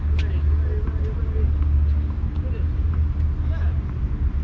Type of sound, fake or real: real